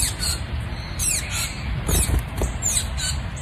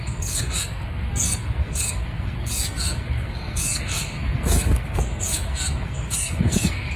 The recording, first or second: first